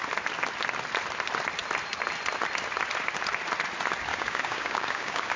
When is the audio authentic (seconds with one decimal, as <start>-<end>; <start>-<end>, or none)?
0.0-4.1